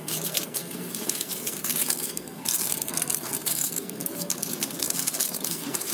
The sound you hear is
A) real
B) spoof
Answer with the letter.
B